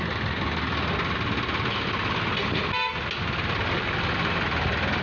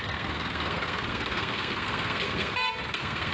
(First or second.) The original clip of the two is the first